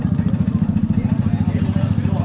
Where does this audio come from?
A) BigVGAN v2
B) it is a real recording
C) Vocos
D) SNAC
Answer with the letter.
B